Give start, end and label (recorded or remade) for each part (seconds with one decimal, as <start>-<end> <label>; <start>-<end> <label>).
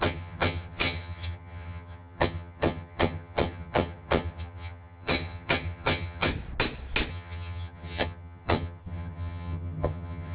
0.0-6.3 remade; 6.3-7.1 recorded; 7.1-10.3 remade